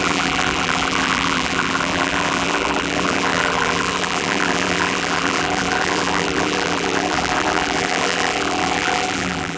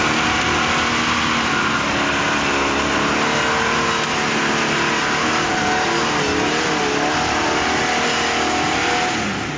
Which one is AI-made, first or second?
first